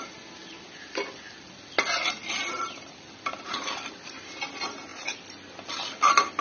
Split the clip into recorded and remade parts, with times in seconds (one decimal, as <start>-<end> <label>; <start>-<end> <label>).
0.0-6.4 recorded